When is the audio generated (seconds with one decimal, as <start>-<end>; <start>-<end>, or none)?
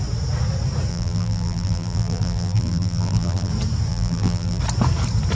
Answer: 0.9-3.5; 3.9-4.6